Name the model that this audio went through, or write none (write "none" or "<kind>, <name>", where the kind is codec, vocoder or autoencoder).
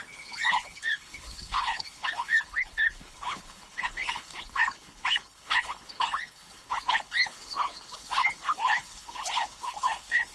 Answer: codec, HILCodec